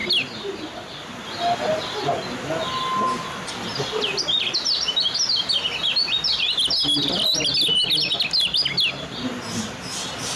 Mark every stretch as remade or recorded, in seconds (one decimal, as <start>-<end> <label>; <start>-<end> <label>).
0.0-10.4 recorded